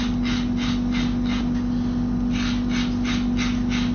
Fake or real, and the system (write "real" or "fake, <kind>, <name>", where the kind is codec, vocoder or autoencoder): real